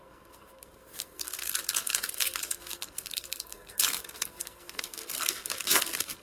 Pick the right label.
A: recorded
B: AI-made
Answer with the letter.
B